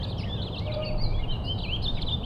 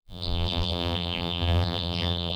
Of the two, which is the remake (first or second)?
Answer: second